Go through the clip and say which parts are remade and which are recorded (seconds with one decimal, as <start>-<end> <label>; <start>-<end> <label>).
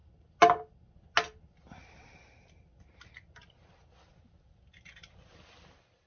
0.0-6.1 recorded